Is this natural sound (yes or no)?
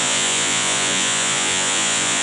no